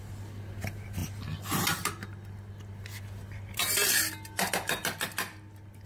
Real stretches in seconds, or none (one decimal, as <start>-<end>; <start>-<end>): 0.0-5.9